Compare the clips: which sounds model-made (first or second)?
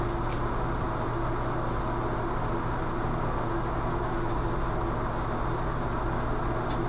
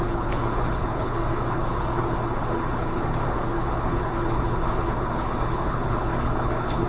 second